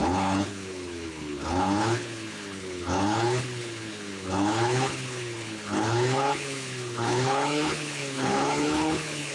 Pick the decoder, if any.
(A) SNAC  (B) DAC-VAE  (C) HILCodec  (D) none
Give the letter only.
C